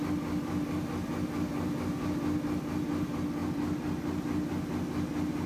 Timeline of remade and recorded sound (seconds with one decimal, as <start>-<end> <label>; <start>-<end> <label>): 0.0-5.5 recorded

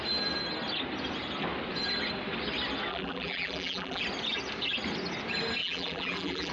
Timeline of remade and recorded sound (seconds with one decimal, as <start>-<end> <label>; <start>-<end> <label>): 0.0-2.9 recorded; 2.9-4.0 remade; 4.0-5.6 recorded; 5.6-6.5 remade

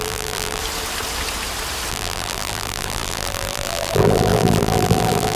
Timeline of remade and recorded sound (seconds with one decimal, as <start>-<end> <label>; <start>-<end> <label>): 0.0-0.6 remade; 0.6-1.9 recorded; 1.9-5.4 remade

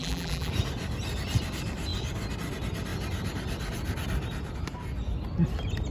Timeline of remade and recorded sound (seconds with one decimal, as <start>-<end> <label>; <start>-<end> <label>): 0.0-0.5 remade; 0.5-5.9 recorded

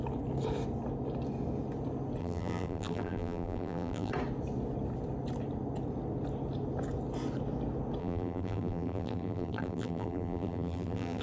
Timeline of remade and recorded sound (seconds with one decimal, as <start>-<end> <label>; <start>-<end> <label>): 0.0-2.2 recorded; 2.2-4.1 remade; 4.1-8.0 recorded; 8.0-11.2 remade

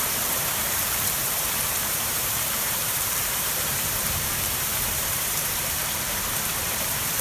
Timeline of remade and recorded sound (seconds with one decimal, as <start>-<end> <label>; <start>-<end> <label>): 0.0-5.8 remade; 5.8-6.5 recorded; 6.5-7.2 remade